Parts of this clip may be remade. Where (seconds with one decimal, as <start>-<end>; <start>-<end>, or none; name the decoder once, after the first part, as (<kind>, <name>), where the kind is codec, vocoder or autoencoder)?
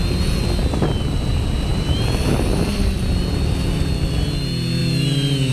2.5-3.1 (vocoder, BigVGAN v2)